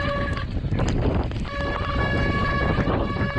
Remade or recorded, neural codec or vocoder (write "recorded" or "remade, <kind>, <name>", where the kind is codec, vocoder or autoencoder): recorded